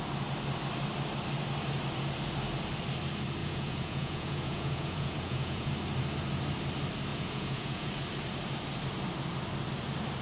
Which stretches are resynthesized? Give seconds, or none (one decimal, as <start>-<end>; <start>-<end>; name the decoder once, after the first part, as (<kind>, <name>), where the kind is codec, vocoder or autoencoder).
3.4-5.7 (vocoder, Vocos); 7.1-7.9

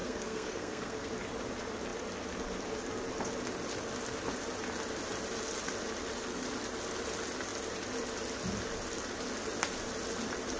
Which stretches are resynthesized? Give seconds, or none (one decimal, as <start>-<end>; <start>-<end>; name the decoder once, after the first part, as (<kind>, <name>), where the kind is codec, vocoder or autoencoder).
0.0-1.1 (codec, SNAC)

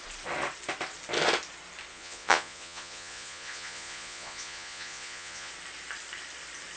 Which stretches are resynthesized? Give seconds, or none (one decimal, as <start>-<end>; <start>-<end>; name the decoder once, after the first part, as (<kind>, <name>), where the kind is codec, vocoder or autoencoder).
1.9-5.5 (vocoder, Vocos)

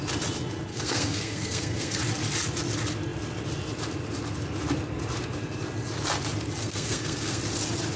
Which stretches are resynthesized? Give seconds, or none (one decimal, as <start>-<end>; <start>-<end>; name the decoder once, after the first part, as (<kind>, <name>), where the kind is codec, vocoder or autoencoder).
0.7-2.0 (codec, SNAC); 6.6-7.4